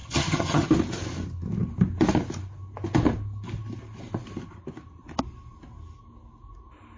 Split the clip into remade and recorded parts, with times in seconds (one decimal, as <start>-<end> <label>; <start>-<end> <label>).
0.0-0.7 remade; 0.7-7.0 recorded